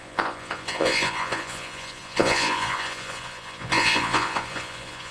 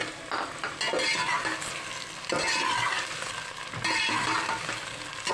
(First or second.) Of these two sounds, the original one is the second